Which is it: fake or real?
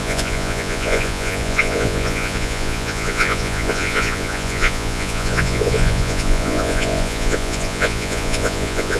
fake